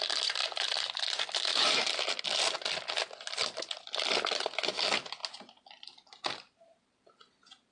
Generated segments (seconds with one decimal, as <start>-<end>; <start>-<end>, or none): 1.5-2.2; 5.2-7.0